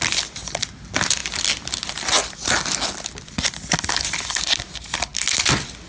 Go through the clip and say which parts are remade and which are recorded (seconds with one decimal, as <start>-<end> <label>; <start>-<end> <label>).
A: 0.0-5.9 recorded